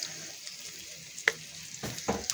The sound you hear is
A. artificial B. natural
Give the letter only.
B